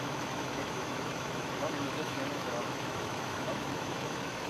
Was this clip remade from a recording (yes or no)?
yes